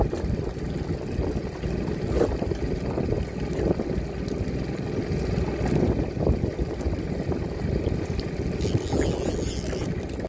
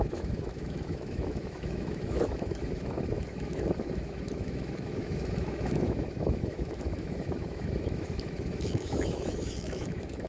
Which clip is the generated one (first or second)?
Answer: second